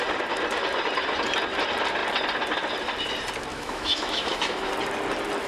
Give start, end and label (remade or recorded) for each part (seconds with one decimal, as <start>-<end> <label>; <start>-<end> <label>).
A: 0.0-3.5 recorded; 3.5-4.7 remade; 4.7-5.5 recorded